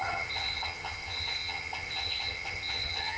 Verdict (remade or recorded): remade